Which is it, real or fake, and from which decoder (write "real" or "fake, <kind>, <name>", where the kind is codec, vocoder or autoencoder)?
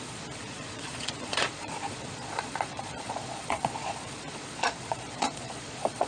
fake, vocoder, Vocos